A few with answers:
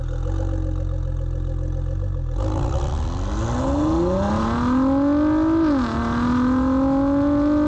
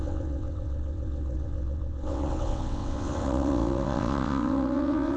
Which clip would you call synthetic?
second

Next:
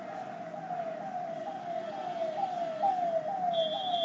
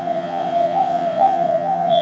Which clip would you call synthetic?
second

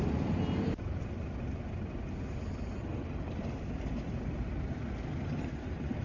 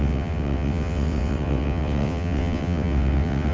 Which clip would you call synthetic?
second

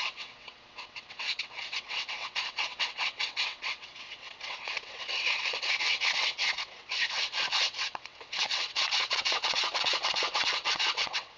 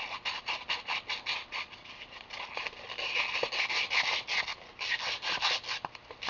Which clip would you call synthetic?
first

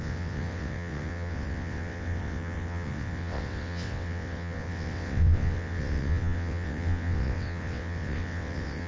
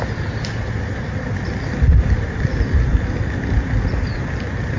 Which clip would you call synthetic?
first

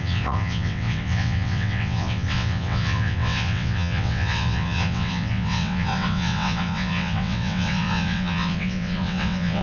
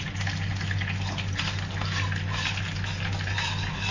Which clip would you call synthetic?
first